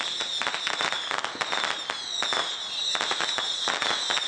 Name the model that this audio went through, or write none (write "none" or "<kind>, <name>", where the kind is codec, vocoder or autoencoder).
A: none